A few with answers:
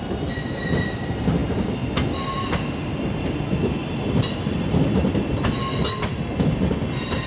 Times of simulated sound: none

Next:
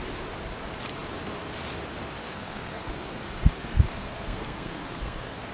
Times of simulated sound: 2.2-5.5 (codec, SNAC)

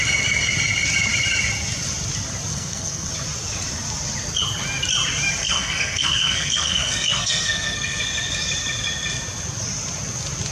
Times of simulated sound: 2.5-3.1 (codec, SNAC); 5.4-8.0

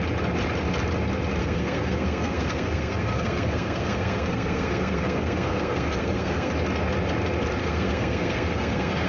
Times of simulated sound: 1.4-6.5 (codec, SNAC); 7.6-9.1

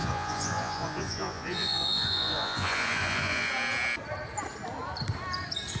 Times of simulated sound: 0.0-3.5 (vocoder, Vocos)

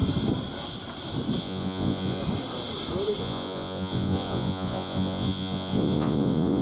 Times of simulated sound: 1.4-2.2 (vocoder, Vocos); 3.2-6.6

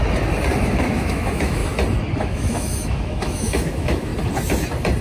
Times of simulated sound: 0.6-1.6 (autoencoder, DAC-VAE); 2.2-4.1

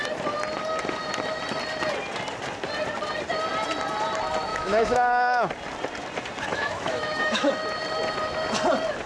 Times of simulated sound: 4.5-5.5 (autoencoder, DAC-VAE); 6.5-7.5